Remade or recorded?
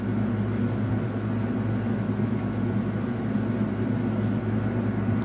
recorded